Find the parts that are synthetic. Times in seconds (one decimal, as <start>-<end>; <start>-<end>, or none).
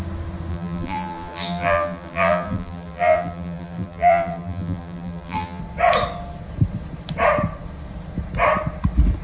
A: 0.5-5.6